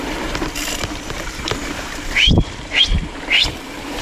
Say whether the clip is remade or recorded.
remade